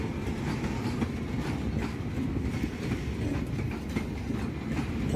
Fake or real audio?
real